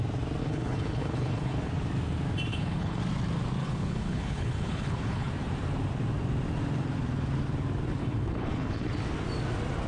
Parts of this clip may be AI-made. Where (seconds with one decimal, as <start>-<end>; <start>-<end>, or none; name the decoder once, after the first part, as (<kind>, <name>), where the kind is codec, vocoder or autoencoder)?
0.4-1.7 (codec, HILCodec); 2.5-3.0; 3.6-5.3; 8.0-8.9